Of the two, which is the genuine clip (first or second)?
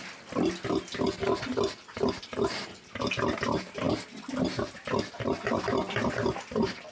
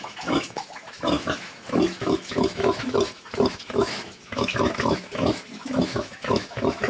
first